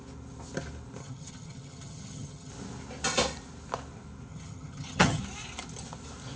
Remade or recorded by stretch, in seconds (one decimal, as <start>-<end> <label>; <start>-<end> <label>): 0.0-1.0 recorded; 1.0-2.5 remade; 2.5-4.3 recorded; 4.3-5.2 remade; 5.2-6.4 recorded